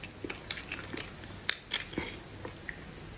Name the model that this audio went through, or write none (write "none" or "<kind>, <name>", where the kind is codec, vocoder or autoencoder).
none